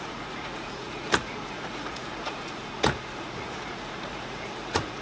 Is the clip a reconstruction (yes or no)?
yes